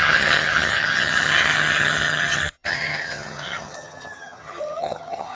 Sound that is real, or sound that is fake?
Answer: fake